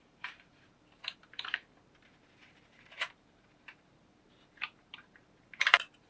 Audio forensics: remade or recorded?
remade